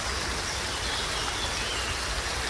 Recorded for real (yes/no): yes